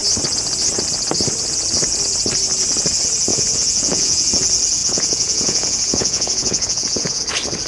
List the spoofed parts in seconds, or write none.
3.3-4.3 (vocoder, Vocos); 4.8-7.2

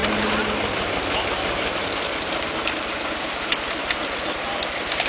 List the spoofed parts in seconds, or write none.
none

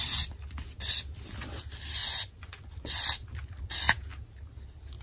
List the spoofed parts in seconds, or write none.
2.0-2.9 (vocoder, Vocos)

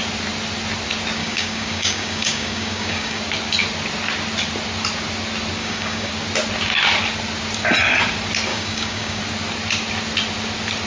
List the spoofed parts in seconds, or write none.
1.2-3.2 (codec, DAC); 5.6-6.1; 8.5-9.2

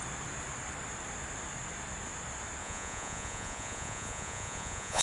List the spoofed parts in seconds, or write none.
2.6-5.0 (vocoder, Vocos)

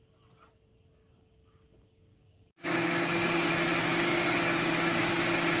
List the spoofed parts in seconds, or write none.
1.0-3.5 (codec, DAC); 3.9-5.1

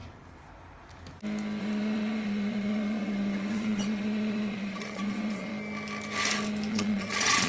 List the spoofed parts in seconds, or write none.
1.6-5.5 (vocoder, Vocos); 6.7-7.5